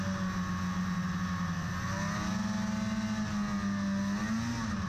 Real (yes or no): yes